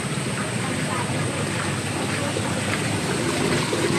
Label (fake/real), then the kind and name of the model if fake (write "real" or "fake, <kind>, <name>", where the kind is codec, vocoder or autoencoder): real